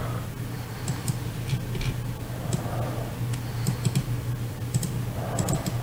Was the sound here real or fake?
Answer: real